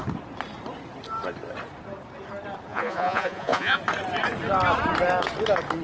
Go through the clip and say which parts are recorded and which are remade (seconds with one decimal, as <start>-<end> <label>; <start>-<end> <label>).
0.0-2.7 recorded; 2.7-3.8 remade; 3.8-5.8 recorded